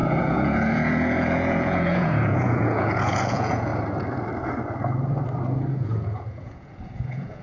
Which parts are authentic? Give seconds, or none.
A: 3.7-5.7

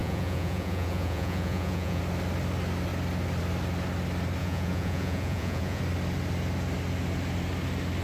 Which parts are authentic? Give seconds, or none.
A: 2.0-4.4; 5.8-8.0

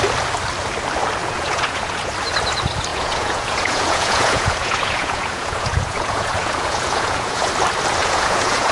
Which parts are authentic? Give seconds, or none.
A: 0.0-1.2; 2.1-2.9; 7.5-8.0

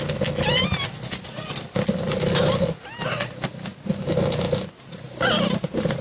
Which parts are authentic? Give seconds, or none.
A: 0.0-6.0

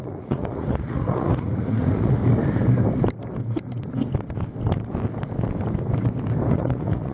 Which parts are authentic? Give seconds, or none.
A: 2.2-6.5